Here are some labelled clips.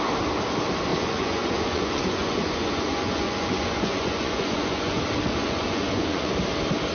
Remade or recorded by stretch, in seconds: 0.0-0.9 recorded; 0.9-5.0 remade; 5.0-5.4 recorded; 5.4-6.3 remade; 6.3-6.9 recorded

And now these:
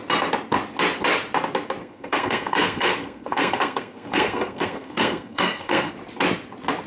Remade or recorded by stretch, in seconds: 0.0-1.8 recorded; 1.8-5.9 remade; 5.9-6.9 recorded

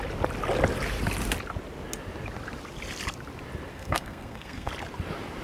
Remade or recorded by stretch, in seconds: 0.0-3.7 recorded; 3.7-4.7 remade; 4.7-5.4 recorded

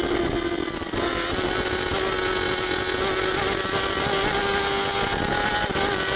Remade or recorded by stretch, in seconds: 0.0-6.2 recorded